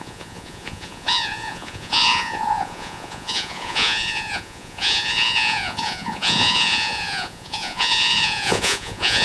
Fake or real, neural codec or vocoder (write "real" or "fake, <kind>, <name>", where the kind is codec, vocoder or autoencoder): fake, vocoder, Vocos